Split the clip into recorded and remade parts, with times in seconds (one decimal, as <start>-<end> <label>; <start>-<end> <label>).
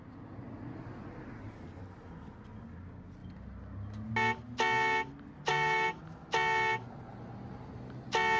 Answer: 0.0-5.5 recorded; 5.5-6.0 remade; 6.0-8.4 recorded